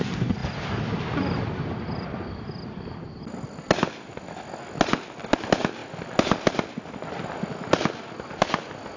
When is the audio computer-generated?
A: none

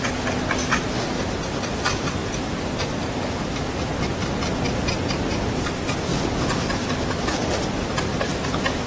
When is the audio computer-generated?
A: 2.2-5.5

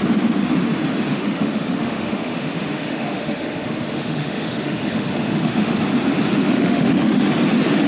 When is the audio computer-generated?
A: 1.1-5.8; 6.3-7.3

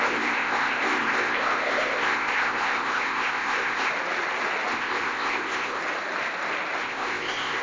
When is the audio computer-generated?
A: 0.0-3.9; 4.7-5.8; 6.8-7.6